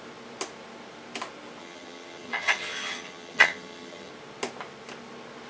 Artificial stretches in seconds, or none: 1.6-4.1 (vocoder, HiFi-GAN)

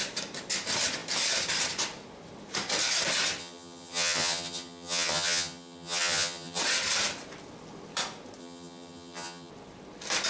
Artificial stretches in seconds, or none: 3.4-6.6 (vocoder, HiFi-GAN); 8.4-9.5

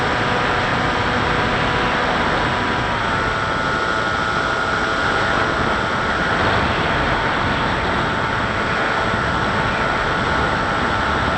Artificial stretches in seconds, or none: none

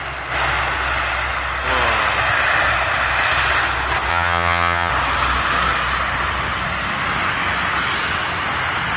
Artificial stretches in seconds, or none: 4.1-4.9 (vocoder, HiFi-GAN)